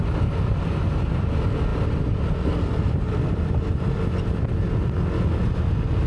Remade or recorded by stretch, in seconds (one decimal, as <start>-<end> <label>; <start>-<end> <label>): 0.0-1.7 recorded; 1.7-5.4 remade; 5.4-6.1 recorded